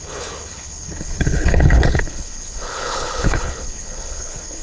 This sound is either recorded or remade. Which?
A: remade